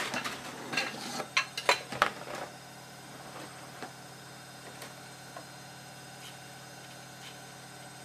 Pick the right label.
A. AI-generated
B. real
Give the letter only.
B